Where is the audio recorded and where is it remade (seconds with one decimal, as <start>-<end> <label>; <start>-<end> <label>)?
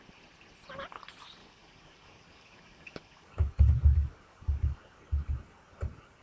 0.0-1.4 recorded; 1.4-5.0 remade; 5.0-6.2 recorded